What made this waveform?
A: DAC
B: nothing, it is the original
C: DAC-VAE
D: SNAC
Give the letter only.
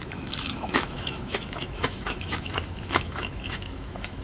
C